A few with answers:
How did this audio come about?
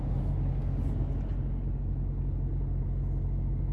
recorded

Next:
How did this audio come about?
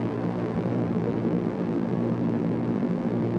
remade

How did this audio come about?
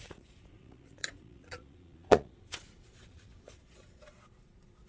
remade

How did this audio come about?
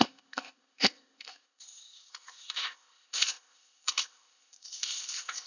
remade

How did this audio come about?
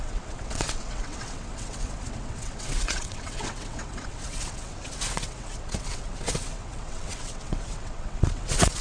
remade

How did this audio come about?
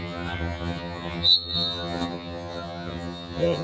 remade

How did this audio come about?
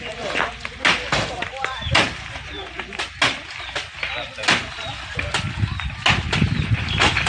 recorded